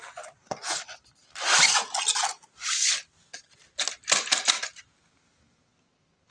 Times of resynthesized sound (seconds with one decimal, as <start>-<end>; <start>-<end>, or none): none